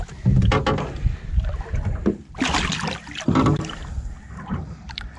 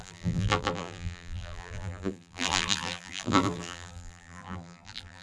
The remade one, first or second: second